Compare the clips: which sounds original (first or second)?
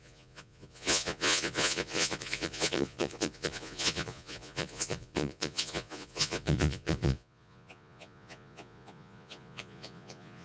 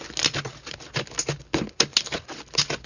second